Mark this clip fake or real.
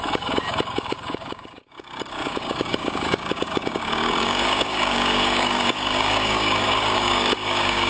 fake